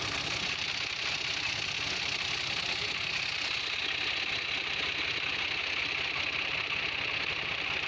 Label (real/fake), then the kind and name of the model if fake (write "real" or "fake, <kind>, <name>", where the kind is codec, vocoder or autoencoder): real